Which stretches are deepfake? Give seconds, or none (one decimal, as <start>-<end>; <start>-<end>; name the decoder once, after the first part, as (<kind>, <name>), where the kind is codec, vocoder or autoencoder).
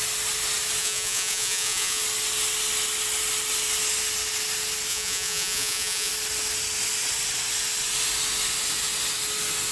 0.8-2.0 (vocoder, Vocos); 4.9-6.1